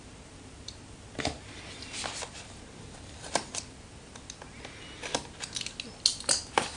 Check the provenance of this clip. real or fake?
real